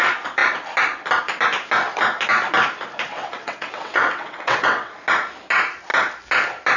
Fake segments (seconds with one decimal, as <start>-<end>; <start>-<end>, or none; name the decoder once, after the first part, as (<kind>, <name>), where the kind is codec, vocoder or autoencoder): 3.1-4.9 (vocoder, WaveNeXt)